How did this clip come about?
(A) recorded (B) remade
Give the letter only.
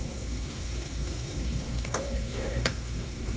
B